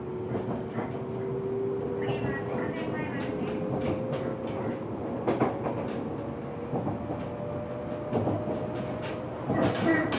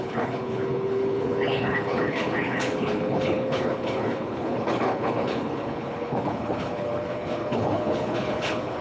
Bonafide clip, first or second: first